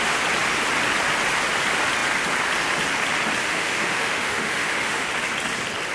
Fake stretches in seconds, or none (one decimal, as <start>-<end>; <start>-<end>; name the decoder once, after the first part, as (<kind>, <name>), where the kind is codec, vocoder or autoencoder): 3.4-5.1 (autoencoder, DAC-VAE)